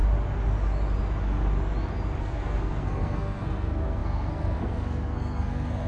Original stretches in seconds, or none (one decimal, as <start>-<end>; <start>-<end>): 0.0-2.2